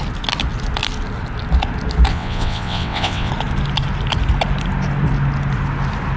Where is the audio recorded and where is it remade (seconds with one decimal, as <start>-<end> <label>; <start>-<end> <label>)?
0.0-2.1 recorded; 2.1-3.3 remade; 3.3-6.2 recorded